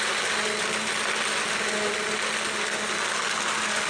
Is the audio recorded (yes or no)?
yes